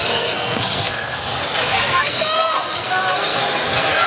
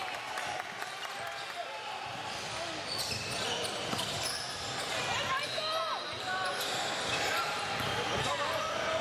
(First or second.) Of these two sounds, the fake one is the first